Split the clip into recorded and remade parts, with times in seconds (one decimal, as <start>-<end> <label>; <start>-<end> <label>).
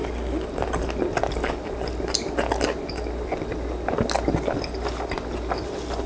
0.0-6.1 recorded